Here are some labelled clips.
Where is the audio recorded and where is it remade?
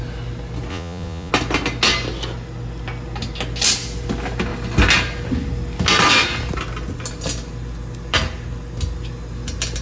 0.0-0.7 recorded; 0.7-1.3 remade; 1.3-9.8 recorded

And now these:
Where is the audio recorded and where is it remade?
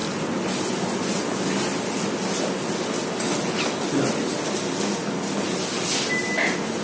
0.0-6.8 recorded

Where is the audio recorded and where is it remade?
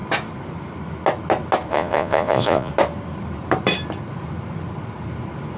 0.0-1.7 recorded; 1.7-2.7 remade; 2.7-5.6 recorded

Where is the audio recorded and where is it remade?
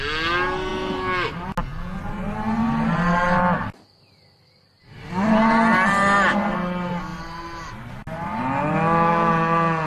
0.0-9.9 recorded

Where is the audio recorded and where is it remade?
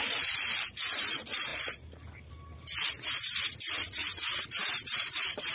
0.0-4.0 recorded; 4.0-5.5 remade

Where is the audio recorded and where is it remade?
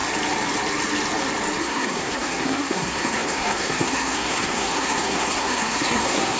0.0-1.6 recorded; 1.6-6.4 remade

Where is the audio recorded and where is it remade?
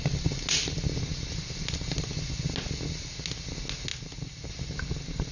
0.0-5.3 recorded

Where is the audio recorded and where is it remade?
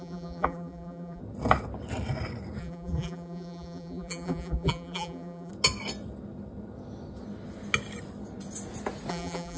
0.0-1.2 remade; 1.2-2.6 recorded; 2.6-5.5 remade; 5.5-9.1 recorded; 9.1-9.6 remade